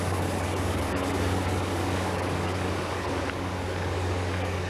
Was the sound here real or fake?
fake